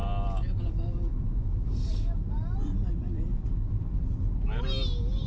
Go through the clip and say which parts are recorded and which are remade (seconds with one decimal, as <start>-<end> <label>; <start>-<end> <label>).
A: 0.0-5.3 recorded